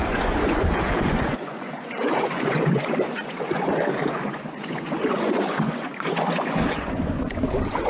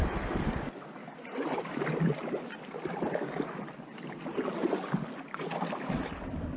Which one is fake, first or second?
first